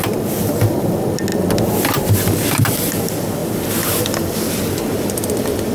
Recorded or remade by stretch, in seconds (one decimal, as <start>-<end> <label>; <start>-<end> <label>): 0.0-5.7 recorded